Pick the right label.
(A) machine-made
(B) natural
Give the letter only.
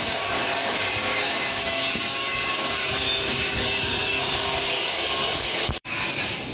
A